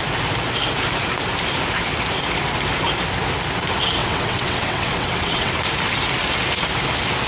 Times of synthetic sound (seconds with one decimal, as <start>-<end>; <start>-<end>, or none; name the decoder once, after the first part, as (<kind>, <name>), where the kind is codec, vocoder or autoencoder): 4.0-5.5 (vocoder, WaveNeXt)